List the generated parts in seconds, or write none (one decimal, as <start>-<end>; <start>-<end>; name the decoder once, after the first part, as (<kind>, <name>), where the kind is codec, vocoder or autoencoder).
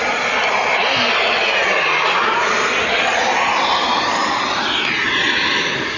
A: none